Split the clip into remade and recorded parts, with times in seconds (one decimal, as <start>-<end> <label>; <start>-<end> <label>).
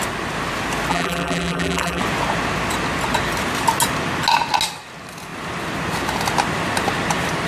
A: 0.0-0.9 recorded; 0.9-2.0 remade; 2.0-7.5 recorded